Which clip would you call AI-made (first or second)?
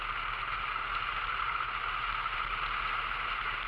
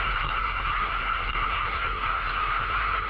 second